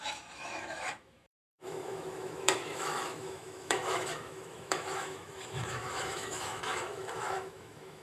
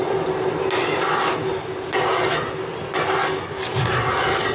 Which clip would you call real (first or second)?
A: second